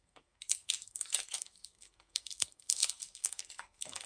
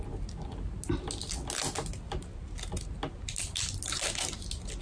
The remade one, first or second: first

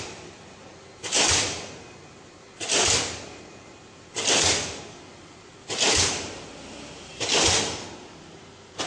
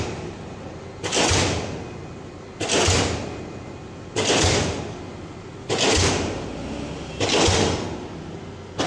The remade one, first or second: first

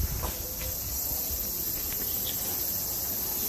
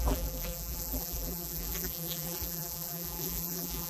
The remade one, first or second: second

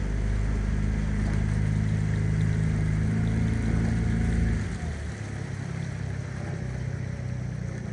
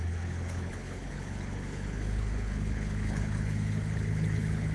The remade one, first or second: second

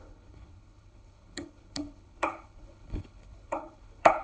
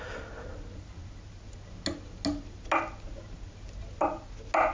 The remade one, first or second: first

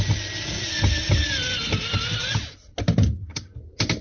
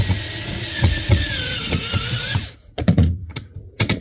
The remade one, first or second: second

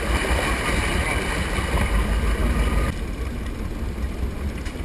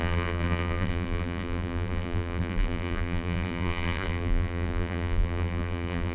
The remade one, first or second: second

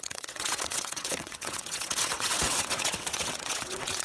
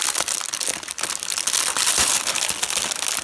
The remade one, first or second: first